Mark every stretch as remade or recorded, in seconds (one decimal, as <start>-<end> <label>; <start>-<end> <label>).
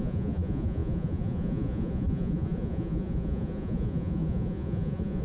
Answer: 0.0-5.2 remade